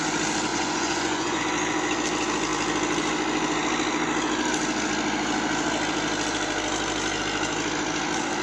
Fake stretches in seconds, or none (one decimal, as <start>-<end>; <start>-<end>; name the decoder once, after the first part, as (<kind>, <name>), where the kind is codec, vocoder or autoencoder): 0.5-1.4 (vocoder, Vocos)